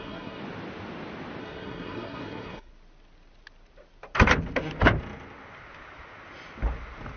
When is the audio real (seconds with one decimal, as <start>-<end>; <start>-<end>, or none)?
0.4-1.4; 2.7-7.2